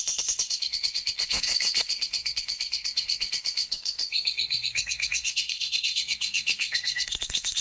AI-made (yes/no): yes